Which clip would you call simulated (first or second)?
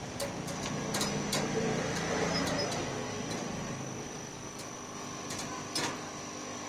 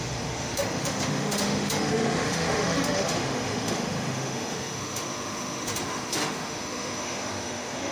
second